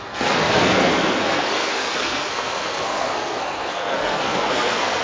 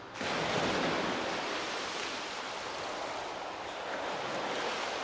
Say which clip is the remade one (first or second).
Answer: first